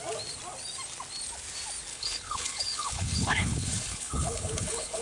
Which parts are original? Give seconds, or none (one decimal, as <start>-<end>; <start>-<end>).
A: 0.0-1.9